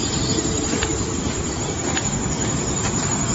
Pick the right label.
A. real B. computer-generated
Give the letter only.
B